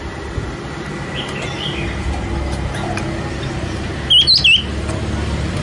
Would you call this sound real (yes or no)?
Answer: yes